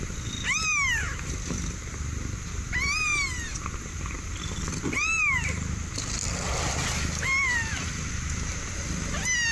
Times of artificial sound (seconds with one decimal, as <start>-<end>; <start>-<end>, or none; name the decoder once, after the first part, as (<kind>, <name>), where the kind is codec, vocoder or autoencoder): none